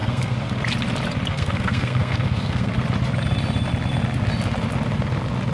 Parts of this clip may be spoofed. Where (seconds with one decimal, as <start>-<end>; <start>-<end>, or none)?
0.0-0.5; 1.3-2.7